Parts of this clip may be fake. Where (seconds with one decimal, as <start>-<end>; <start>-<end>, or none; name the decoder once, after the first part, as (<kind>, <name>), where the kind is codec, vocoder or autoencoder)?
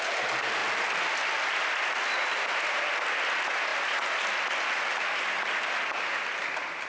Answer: none